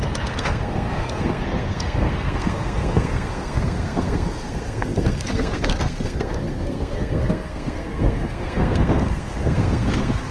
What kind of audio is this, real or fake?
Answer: fake